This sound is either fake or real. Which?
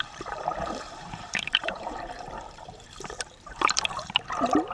fake